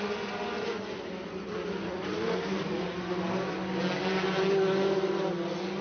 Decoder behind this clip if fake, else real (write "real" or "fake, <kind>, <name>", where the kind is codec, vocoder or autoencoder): real